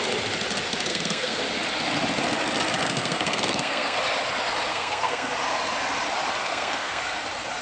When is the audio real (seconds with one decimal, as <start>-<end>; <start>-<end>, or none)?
0.0-0.9; 1.4-2.8; 4.0-4.7; 5.3-6.4; 7.0-7.6